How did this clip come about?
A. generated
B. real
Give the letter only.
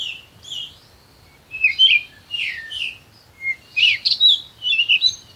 A